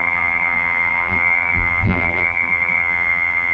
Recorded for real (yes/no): no